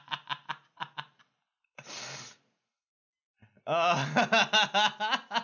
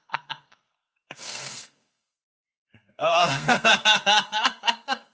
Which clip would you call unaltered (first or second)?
first